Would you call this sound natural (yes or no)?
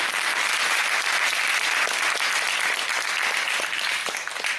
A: yes